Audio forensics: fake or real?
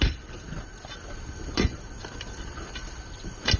real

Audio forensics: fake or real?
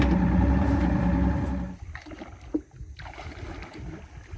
real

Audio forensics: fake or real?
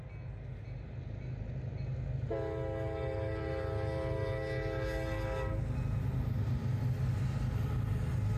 real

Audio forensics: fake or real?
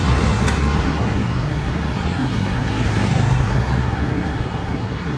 fake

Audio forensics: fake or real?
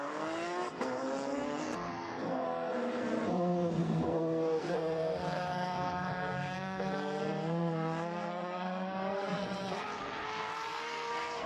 fake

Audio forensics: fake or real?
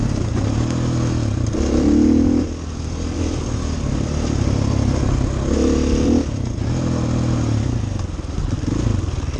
real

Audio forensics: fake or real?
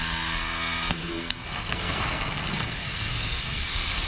fake